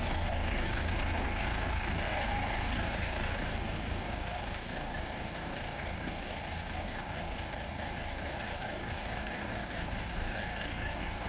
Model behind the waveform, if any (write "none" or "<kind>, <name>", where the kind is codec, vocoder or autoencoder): codec, DAC